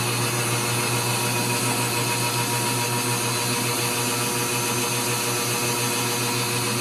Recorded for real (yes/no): yes